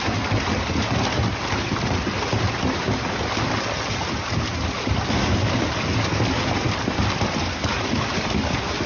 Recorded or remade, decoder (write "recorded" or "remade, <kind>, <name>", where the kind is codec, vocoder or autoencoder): recorded